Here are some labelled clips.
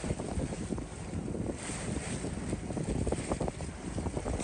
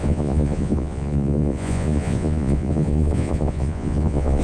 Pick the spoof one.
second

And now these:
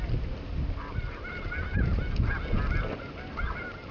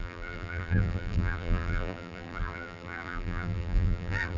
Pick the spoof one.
second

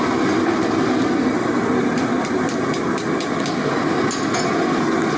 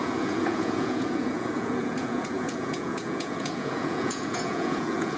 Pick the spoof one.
second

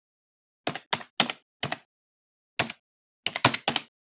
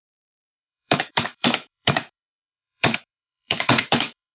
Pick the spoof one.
second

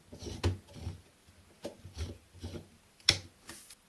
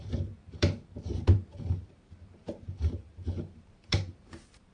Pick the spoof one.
second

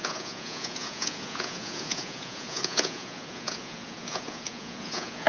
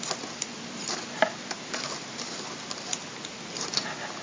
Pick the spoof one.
first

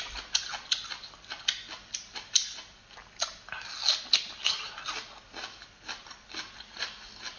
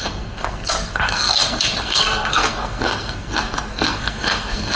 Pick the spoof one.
second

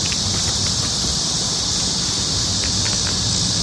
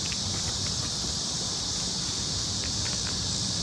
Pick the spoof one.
second